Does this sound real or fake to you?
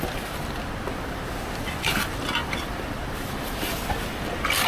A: real